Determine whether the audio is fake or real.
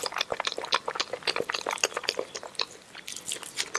real